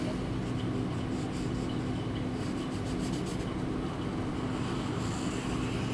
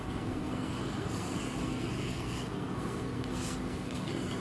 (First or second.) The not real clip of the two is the second